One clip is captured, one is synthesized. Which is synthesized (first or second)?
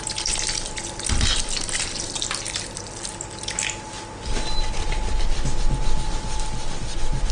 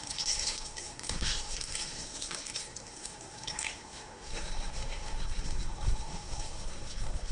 second